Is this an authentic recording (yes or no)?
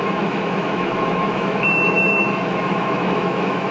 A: no